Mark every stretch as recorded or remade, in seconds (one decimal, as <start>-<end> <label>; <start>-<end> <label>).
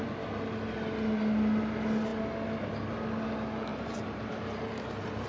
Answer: 0.0-3.7 recorded; 3.7-5.3 remade